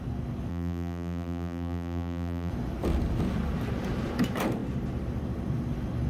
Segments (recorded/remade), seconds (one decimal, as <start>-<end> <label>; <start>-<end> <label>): 0.0-0.5 recorded; 0.5-2.5 remade; 2.5-6.1 recorded